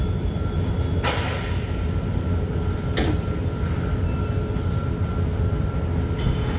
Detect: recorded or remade recorded